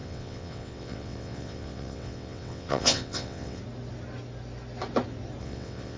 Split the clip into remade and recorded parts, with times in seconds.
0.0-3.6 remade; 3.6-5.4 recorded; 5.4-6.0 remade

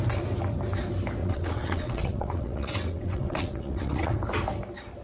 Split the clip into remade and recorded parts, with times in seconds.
0.0-1.2 recorded; 1.2-4.2 remade; 4.2-5.0 recorded

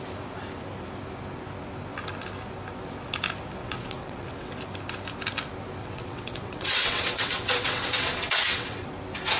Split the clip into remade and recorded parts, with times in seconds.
0.0-3.6 recorded; 3.6-4.5 remade; 4.5-5.8 recorded; 5.8-8.9 remade; 8.9-9.4 recorded

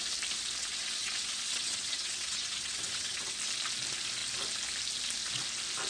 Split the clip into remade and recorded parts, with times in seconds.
0.0-0.6 recorded; 0.6-3.3 remade; 3.3-5.9 recorded

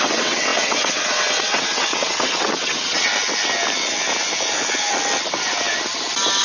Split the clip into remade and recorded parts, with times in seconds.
0.0-3.1 remade; 3.1-6.4 recorded

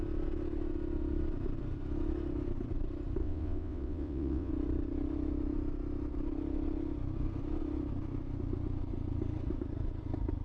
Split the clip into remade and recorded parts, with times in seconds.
0.0-3.2 recorded; 3.2-4.5 remade; 4.5-10.4 recorded

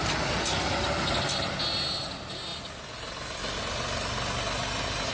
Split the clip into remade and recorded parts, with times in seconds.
0.0-5.1 recorded

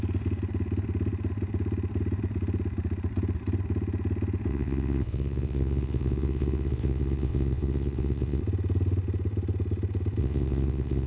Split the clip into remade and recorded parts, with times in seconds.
0.0-4.5 recorded; 4.5-8.4 remade; 8.4-10.2 recorded; 10.2-11.1 remade